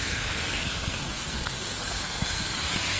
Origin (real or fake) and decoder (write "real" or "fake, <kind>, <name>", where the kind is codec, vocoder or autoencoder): fake, codec, SNAC